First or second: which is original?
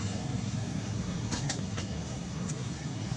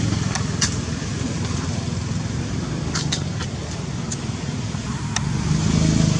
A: second